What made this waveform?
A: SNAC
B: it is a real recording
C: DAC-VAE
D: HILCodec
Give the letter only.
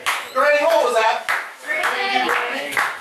C